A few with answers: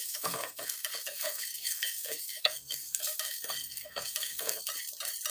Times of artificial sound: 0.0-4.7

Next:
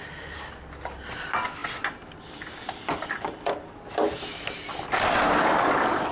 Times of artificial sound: none